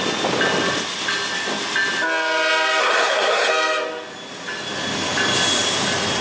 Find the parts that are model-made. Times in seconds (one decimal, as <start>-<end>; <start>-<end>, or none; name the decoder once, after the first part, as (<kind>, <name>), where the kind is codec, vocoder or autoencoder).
2.8-3.5 (codec, SNAC)